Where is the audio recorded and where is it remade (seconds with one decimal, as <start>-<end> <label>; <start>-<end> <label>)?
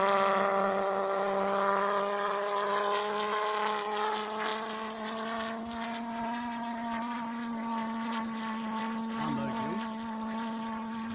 0.0-11.1 recorded